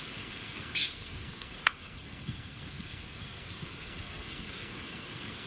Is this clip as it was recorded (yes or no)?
no